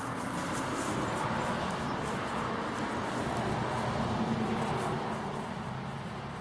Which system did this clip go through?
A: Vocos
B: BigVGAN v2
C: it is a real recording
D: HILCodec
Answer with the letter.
C